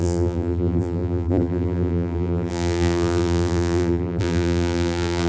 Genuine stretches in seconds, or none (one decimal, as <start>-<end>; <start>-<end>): none